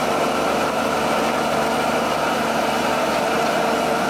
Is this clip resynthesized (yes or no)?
no